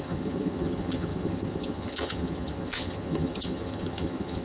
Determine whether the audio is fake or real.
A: fake